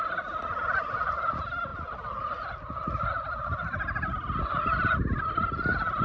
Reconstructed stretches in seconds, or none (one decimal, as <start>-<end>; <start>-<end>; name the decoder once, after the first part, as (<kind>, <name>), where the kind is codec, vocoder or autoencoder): none